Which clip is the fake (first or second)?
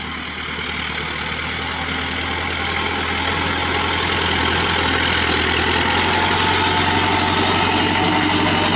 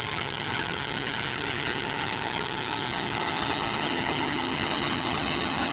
second